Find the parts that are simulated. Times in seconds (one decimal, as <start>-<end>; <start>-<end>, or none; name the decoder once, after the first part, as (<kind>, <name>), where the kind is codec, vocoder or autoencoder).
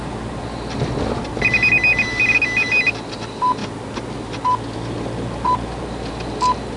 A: none